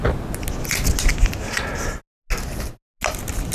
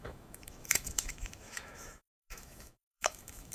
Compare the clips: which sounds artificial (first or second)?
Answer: second